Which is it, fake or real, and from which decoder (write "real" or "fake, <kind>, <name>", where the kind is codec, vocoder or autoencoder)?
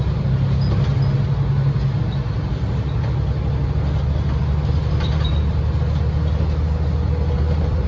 real